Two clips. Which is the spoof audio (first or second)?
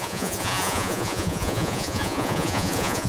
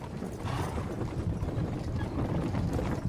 first